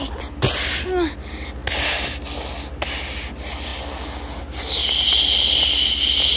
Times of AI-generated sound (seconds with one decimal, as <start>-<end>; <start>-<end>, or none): none